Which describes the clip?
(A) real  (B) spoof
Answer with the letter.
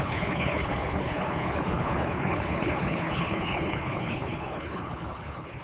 B